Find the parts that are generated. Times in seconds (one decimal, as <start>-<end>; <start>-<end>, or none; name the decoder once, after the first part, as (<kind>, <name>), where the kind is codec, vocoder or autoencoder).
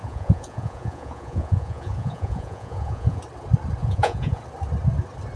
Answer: 0.0-3.2 (vocoder, Vocos); 3.8-4.4